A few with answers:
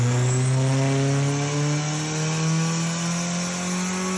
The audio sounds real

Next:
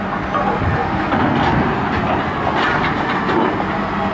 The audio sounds real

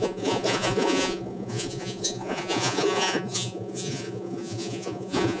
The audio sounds fake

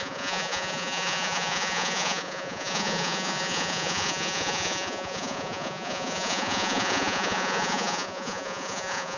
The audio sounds fake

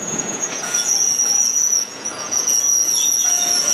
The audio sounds fake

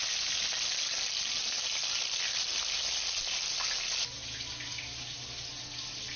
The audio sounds real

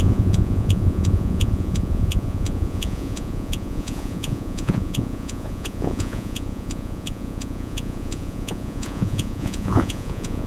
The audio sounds fake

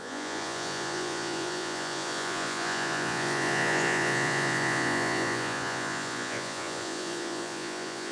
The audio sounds fake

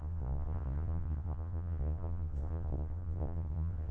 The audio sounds fake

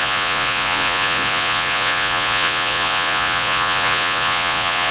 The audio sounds fake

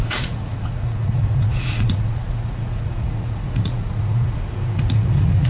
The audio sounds fake